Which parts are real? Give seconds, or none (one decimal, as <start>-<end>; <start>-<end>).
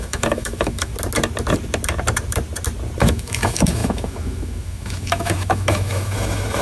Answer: 0.9-3.0